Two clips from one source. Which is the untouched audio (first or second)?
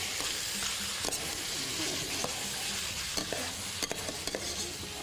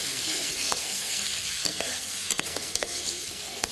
first